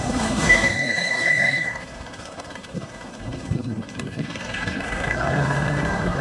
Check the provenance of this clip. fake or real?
fake